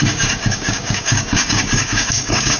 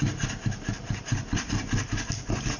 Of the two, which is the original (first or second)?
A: second